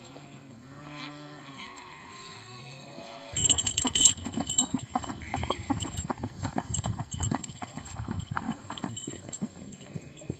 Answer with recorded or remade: remade